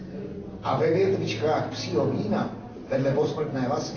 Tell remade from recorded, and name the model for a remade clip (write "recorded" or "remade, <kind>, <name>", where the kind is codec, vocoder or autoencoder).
recorded